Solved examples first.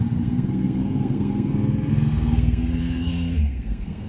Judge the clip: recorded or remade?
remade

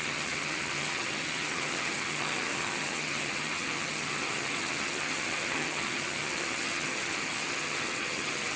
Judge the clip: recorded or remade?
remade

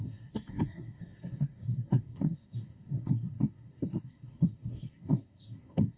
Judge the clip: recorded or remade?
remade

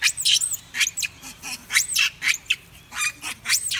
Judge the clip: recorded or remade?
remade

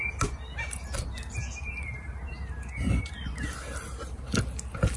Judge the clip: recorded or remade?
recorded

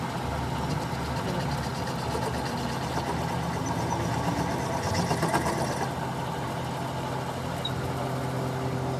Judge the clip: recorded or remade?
recorded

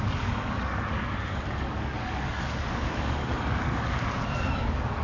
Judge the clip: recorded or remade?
remade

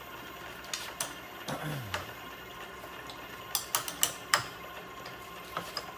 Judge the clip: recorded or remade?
recorded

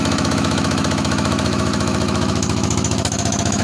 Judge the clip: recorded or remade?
remade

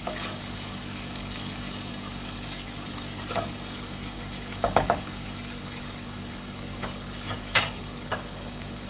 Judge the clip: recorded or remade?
remade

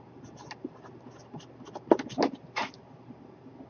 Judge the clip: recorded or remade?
recorded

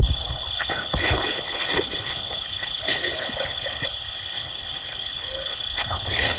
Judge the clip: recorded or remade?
remade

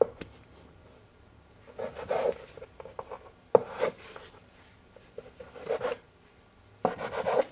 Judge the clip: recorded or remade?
recorded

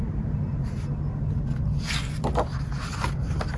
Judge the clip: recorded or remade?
recorded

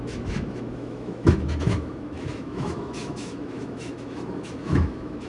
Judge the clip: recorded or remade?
remade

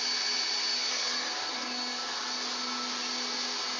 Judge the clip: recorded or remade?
recorded